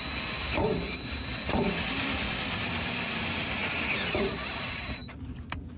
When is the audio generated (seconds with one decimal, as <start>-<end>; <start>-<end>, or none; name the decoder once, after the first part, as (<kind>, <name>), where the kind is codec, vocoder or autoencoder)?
0.6-5.0 (vocoder, BigVGAN v2)